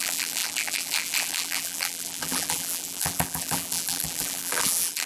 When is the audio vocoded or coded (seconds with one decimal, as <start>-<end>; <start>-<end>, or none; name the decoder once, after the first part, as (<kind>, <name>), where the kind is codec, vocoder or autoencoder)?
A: 0.0-5.1 (vocoder, BigVGAN v2)